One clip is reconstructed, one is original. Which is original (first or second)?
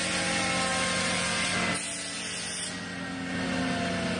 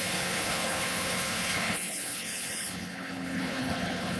first